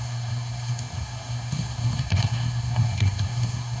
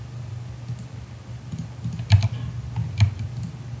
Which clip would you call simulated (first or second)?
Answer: first